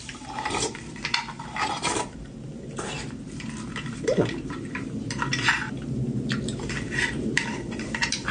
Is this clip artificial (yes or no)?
yes